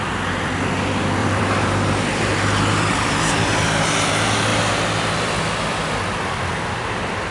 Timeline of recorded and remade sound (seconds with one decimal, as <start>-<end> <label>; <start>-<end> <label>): 0.0-1.2 recorded; 1.2-3.3 remade; 3.3-7.3 recorded